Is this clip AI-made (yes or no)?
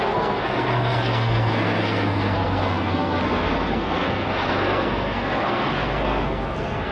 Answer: yes